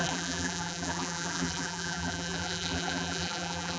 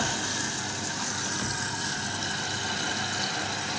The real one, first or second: second